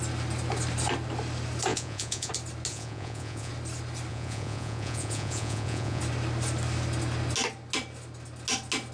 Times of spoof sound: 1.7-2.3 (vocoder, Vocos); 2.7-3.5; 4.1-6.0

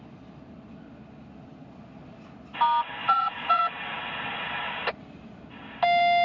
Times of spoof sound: 3.0-3.6 (vocoder, Vocos)

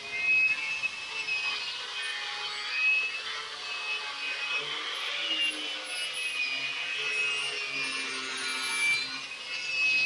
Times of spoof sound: none

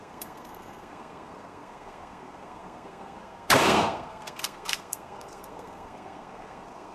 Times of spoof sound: 0.0-6.9 (codec, SNAC)

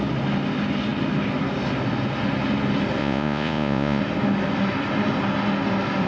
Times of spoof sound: 3.0-4.0 (vocoder, Vocos)

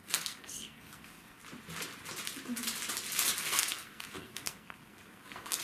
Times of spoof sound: 0.0-1.4 (codec, SNAC); 3.4-5.6

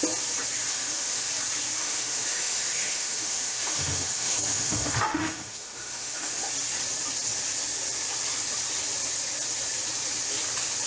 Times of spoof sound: 0.7-1.3 (autoencoder, DAC-VAE); 1.8-6.5